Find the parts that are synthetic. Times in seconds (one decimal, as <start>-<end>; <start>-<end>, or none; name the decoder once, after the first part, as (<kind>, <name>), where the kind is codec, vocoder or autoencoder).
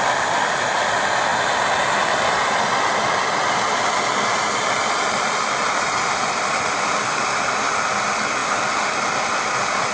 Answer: none